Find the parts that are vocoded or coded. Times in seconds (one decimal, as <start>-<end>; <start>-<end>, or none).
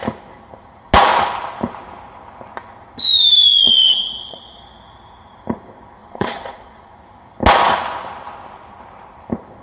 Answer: 3.5-4.6; 6.0-6.9